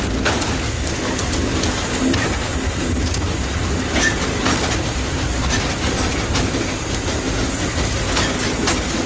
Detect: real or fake real